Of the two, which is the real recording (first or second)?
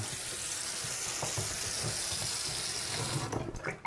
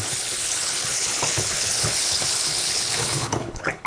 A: first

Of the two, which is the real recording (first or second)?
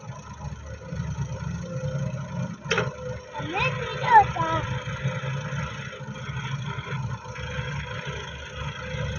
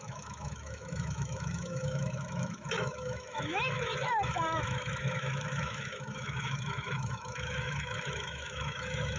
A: first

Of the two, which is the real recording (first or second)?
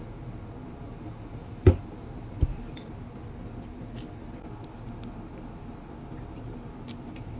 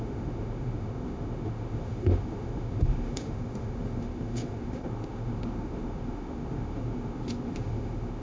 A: first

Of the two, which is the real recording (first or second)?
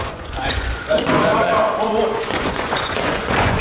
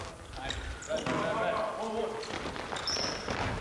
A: second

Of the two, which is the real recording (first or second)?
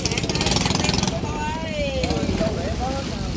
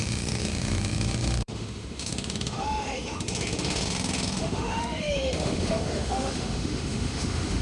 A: first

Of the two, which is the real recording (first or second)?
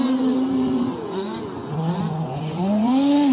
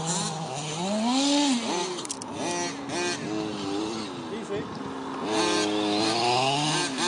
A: second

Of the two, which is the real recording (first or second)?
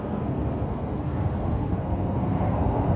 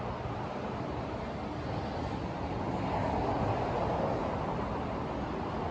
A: second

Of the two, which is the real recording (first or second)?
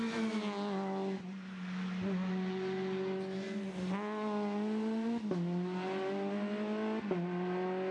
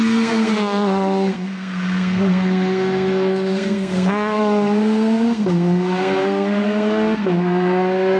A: first